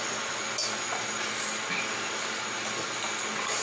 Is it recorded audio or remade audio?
recorded